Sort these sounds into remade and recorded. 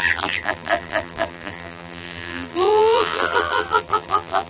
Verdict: remade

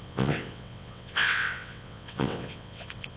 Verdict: remade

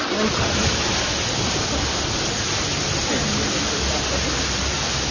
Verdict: recorded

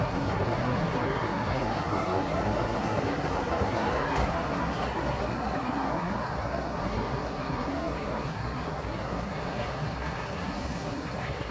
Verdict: remade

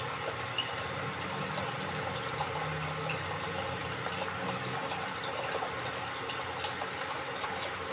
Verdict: recorded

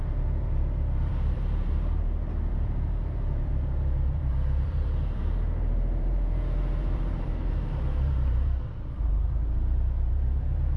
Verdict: remade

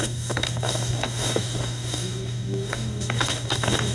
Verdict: remade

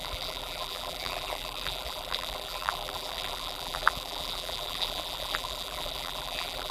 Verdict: remade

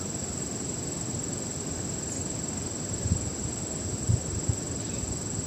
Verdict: remade